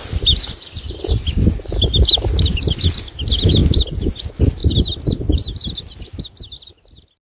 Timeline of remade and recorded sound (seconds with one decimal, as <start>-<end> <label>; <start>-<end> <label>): 0.0-1.0 remade; 1.0-7.3 recorded